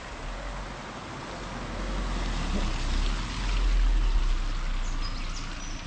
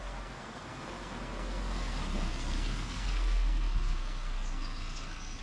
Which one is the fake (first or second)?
second